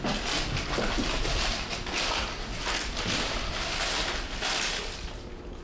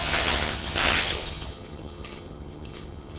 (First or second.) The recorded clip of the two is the first